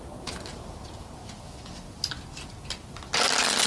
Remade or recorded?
recorded